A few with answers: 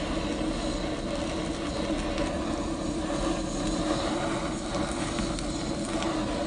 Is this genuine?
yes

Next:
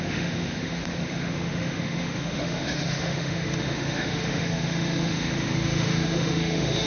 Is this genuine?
no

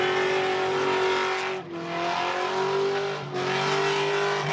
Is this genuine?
yes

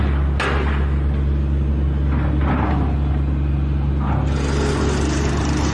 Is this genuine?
yes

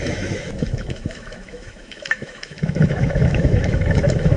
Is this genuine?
no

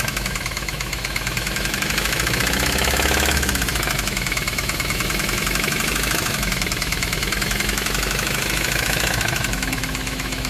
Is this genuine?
no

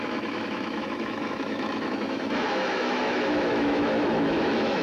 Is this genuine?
no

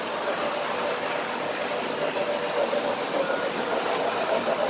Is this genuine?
yes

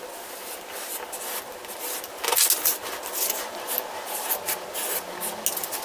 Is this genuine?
yes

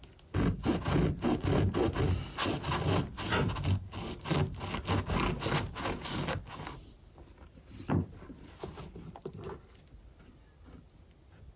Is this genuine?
yes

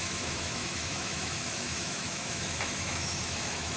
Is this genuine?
no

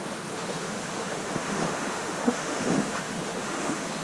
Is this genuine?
no